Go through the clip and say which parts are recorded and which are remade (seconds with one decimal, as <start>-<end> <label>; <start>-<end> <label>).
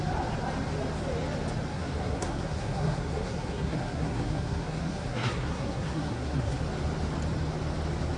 0.0-1.7 recorded; 1.7-6.6 remade; 6.6-8.2 recorded